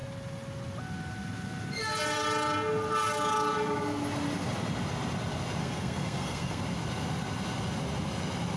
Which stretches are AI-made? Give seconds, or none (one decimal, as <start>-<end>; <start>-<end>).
5.6-6.6

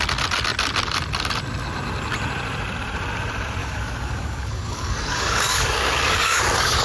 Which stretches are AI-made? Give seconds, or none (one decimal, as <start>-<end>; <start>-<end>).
3.6-6.8

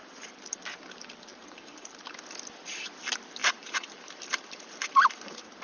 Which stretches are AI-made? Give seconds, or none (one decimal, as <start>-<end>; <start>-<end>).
1.3-2.0; 3.4-5.6

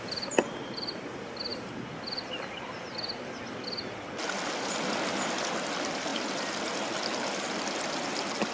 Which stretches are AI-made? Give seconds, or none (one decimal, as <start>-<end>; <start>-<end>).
none

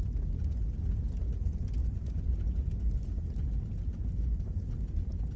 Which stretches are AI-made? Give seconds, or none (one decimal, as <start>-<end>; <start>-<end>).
1.8-2.8

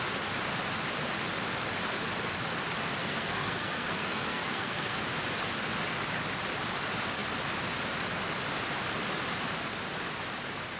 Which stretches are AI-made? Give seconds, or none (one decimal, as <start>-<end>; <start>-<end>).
3.0-5.0